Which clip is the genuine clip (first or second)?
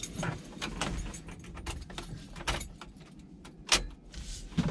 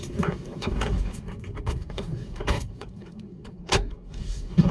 first